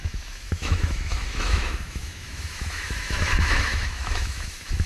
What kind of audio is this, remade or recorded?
remade